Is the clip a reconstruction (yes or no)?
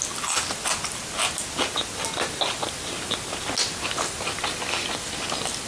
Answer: no